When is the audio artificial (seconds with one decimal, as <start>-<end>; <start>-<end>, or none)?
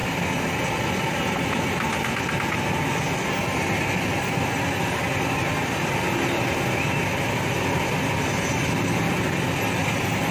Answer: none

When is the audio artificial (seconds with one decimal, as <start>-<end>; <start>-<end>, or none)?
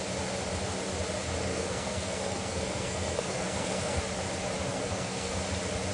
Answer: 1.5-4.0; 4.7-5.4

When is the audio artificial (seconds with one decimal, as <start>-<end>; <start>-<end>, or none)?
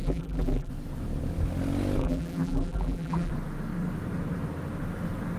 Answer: 0.0-0.7; 2.0-3.3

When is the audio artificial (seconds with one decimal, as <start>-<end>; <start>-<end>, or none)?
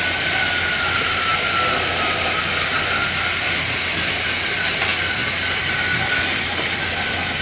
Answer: none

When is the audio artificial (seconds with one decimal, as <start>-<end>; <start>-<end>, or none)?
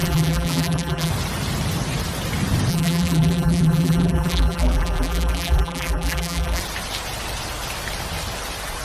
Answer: 0.0-1.1; 2.7-6.6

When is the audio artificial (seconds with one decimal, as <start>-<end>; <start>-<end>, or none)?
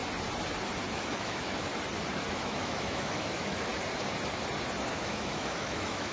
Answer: 0.9-1.7; 2.3-3.7; 4.9-6.1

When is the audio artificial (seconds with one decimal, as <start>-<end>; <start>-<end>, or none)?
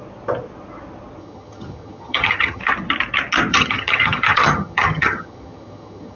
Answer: 1.2-2.6; 3.5-6.2